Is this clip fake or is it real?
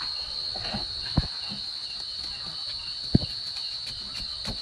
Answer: real